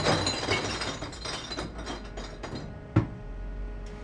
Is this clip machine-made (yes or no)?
no